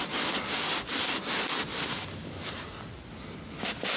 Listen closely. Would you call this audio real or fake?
real